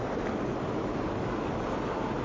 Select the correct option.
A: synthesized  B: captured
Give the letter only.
B